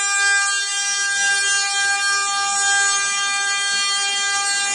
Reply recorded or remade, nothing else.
recorded